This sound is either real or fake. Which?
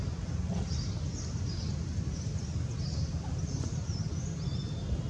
real